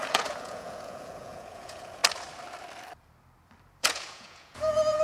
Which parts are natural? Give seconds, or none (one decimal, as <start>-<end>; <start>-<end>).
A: 2.0-3.8